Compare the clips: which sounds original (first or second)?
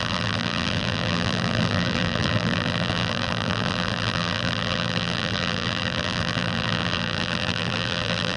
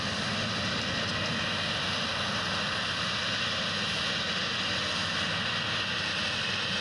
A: second